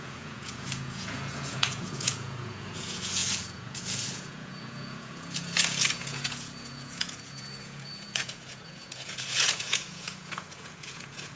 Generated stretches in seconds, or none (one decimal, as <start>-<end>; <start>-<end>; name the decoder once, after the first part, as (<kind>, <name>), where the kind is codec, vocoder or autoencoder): 0.0-11.4 (vocoder, Vocos)